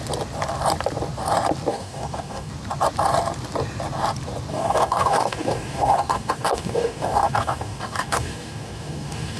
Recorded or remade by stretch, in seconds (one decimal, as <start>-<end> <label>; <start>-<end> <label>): 0.0-1.7 recorded; 1.7-2.5 remade; 2.5-4.5 recorded; 4.5-9.4 remade